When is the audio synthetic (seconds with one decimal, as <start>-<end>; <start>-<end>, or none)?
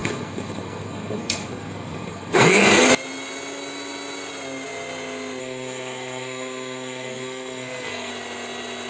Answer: 0.0-2.9; 5.4-8.1